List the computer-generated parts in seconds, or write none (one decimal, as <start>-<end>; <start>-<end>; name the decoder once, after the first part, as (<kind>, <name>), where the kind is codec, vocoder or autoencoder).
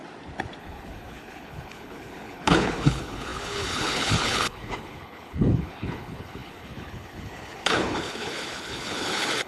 0.6-9.5 (codec, HILCodec)